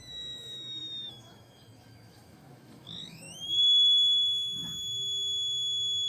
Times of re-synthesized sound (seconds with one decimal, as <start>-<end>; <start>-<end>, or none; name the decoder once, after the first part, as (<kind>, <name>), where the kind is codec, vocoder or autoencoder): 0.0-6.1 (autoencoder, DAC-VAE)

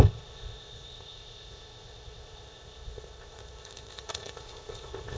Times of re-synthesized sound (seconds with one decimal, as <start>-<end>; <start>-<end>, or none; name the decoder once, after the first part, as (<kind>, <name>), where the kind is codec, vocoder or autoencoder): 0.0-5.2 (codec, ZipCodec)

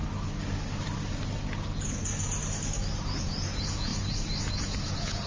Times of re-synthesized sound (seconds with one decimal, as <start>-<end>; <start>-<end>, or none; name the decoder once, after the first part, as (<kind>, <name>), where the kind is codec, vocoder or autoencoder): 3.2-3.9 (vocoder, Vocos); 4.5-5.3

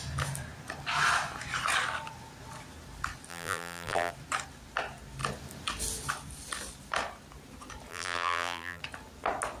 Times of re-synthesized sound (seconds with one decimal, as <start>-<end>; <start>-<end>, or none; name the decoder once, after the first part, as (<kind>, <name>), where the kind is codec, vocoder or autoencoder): 3.3-4.1 (vocoder, BigVGAN v2); 7.9-8.8

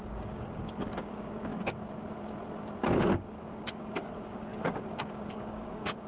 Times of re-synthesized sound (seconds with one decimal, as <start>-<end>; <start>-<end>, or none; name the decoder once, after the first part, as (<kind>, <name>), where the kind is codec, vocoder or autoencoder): 0.0-1.5 (codec, DAC); 3.0-6.1

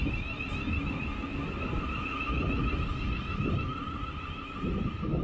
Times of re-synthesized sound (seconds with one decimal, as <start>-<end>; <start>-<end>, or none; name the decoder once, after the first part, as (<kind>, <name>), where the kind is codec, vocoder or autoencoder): none

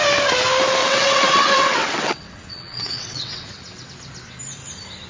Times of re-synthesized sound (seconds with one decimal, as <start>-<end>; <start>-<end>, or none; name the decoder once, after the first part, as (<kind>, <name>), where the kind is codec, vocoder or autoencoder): 0.8-3.9 (vocoder, WaveNeXt)